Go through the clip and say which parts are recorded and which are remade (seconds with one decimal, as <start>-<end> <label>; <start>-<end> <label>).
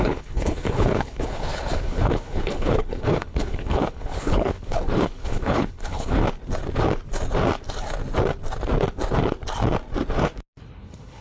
0.0-6.2 remade; 6.2-10.6 recorded; 10.6-11.2 remade